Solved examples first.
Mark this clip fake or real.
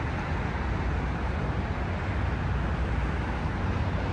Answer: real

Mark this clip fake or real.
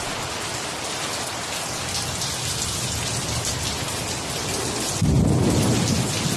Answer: real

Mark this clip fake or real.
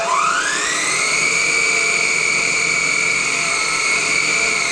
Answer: fake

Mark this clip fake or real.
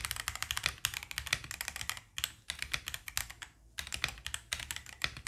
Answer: real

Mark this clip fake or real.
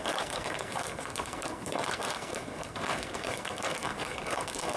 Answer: fake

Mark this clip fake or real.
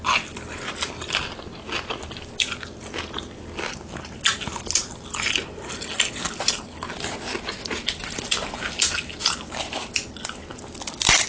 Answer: real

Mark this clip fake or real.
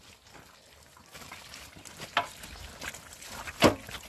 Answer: real